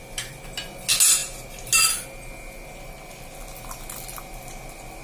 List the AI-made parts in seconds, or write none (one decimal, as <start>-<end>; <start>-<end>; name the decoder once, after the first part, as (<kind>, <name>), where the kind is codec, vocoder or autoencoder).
none